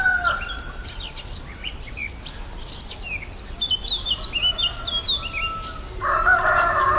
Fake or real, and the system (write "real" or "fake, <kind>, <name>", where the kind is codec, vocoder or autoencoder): real